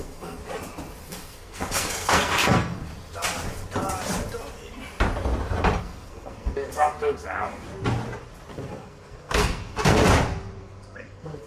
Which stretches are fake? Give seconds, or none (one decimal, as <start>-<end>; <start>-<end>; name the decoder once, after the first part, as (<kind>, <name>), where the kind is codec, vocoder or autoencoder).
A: 0.0-0.4 (codec, SNAC); 1.0-2.9; 5.8-7.7; 8.5-10.0; 10.6-11.5